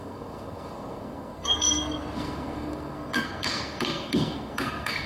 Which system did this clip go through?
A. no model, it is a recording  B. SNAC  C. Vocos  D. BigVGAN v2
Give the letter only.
B